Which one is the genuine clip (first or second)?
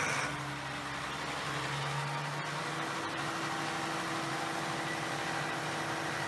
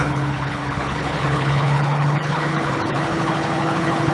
first